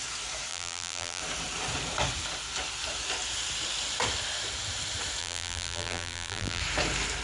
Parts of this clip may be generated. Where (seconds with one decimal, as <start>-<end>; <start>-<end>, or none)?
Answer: 0.5-1.2; 5.2-6.6

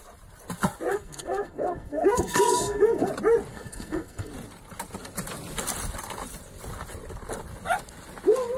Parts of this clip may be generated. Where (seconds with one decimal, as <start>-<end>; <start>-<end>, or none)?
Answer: 0.9-3.1; 3.5-4.3

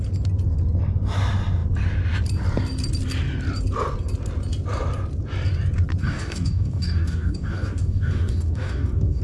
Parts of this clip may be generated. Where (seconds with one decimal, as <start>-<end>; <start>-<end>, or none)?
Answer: 6.0-9.2

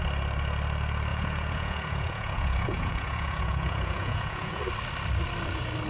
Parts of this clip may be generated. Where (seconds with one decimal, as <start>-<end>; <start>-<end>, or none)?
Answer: 1.1-4.6

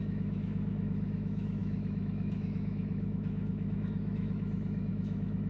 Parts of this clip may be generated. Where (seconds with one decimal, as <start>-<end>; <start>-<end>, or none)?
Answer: 0.0-5.5

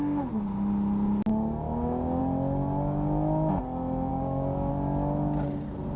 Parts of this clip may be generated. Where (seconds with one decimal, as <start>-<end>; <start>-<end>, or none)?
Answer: 1.3-2.2; 4.1-4.7

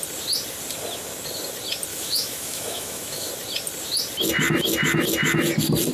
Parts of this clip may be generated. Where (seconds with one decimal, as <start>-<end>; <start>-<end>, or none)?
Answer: 1.9-3.3